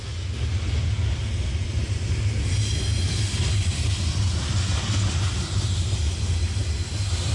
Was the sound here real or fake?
real